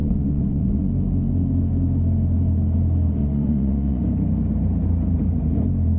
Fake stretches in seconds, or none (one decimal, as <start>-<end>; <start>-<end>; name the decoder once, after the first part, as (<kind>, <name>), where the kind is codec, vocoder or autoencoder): 0.0-0.8 (vocoder, Vocos); 3.2-4.0